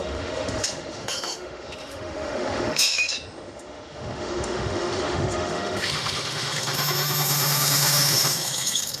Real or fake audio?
fake